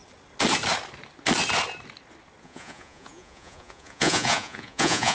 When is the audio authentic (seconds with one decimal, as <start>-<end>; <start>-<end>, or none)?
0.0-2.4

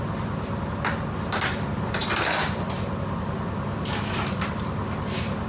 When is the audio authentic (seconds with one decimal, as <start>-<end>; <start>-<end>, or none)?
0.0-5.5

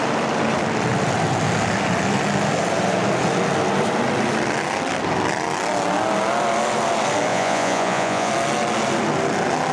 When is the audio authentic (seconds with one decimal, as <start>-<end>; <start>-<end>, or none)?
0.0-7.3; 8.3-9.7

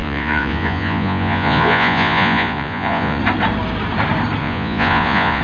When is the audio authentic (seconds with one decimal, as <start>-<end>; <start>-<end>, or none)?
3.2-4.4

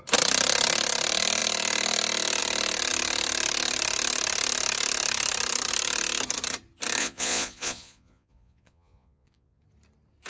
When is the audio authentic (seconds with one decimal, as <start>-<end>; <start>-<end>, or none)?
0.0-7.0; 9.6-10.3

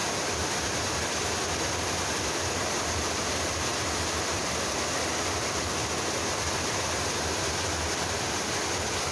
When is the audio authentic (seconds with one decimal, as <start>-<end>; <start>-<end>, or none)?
0.0-9.1